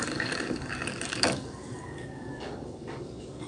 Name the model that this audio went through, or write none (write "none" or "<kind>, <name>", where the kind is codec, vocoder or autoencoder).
codec, DAC